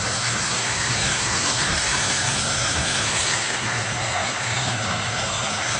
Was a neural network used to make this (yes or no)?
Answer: yes